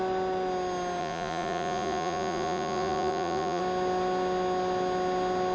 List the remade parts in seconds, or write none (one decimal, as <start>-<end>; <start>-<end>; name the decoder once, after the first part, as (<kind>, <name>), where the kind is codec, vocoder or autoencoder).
1.0-3.6 (vocoder, Vocos)